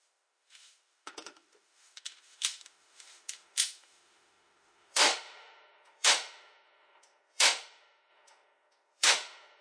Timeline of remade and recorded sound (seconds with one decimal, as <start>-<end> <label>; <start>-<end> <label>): 0.0-9.6 remade